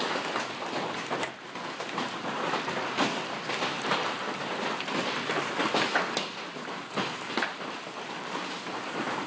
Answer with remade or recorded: recorded